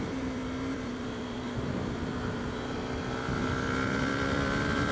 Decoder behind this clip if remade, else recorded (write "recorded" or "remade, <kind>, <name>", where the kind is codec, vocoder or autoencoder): remade, vocoder, BigVGAN v2